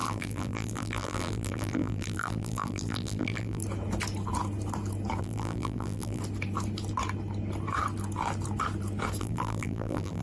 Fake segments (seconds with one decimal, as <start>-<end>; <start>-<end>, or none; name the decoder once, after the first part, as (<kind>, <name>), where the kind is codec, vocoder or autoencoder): 0.0-3.6 (vocoder, BigVGAN v2); 5.2-6.2; 9.2-10.2